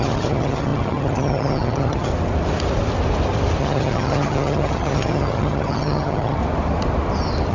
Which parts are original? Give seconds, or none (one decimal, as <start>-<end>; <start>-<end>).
2.1-3.6; 6.4-7.5